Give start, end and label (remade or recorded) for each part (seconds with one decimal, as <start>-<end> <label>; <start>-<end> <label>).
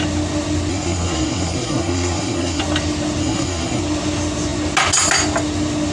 0.0-0.7 recorded; 0.7-2.6 remade; 2.6-3.2 recorded; 3.2-3.8 remade; 3.8-5.9 recorded